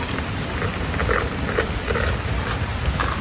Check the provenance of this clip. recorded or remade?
remade